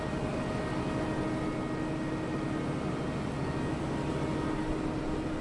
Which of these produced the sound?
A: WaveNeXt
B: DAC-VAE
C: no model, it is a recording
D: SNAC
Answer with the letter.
C